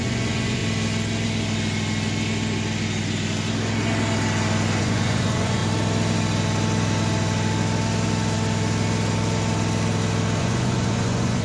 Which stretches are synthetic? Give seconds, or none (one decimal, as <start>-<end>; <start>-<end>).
0.0-0.6; 4.8-5.6; 10.4-11.4